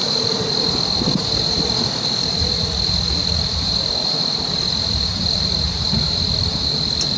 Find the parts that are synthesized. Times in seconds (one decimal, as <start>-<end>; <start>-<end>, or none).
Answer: none